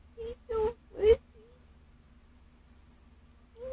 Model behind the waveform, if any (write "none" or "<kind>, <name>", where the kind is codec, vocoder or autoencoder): none